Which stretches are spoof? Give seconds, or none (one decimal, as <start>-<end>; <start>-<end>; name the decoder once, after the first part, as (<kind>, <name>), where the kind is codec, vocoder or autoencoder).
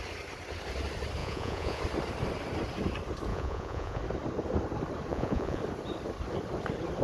1.2-1.8 (vocoder, Vocos); 3.3-4.0; 5.1-5.6